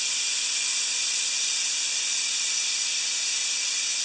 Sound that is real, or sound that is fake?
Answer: real